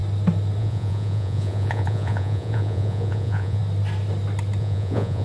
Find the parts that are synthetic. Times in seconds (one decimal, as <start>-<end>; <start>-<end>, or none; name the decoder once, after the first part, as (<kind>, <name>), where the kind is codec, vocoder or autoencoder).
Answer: 0.6-3.6 (vocoder, Vocos); 4.6-5.2

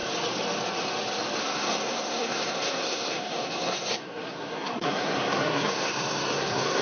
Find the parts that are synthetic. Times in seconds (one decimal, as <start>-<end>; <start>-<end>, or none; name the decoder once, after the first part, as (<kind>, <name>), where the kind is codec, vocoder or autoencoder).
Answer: 1.4-6.8 (codec, SNAC)